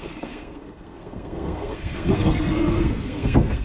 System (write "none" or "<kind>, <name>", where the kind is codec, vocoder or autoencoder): codec, SNAC